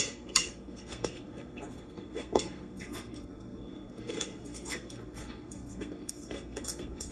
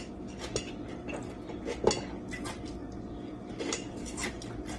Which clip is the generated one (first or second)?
first